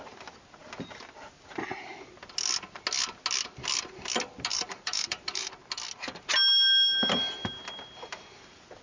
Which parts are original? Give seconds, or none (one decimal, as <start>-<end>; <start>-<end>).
0.0-4.5; 5.5-8.8